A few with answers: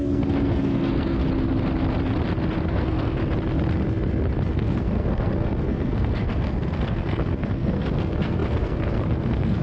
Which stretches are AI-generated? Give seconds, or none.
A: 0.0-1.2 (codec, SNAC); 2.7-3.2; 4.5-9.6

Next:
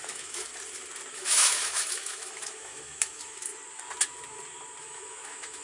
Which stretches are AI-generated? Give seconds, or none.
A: 0.0-0.5 (autoencoder, DAC-VAE); 1.1-3.5; 4.8-5.6

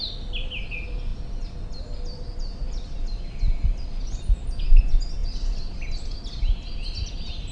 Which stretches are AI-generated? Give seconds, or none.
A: none

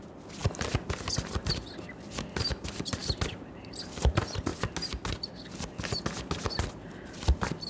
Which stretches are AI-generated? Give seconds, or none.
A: none

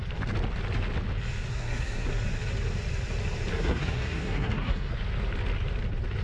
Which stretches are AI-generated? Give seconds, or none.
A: 1.5-2.1 (codec, SNAC); 3.5-4.9

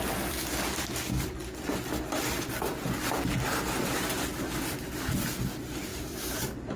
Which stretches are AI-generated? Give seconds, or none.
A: 5.9-6.8 (vocoder, BigVGAN v2)

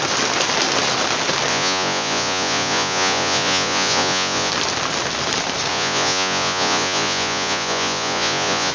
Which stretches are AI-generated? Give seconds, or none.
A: 1.5-4.5 (vocoder, Vocos); 5.7-8.7